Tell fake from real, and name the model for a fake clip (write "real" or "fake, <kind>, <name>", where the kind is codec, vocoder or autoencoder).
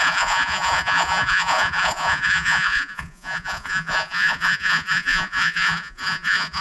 fake, vocoder, Vocos